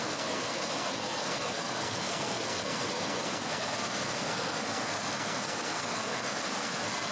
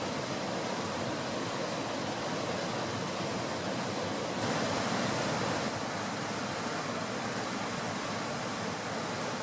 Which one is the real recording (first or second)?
second